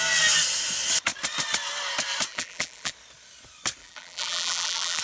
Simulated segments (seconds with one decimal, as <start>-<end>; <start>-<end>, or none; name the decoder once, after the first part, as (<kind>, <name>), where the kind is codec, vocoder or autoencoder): 2.3-2.9 (vocoder, BigVGAN v2); 3.8-5.0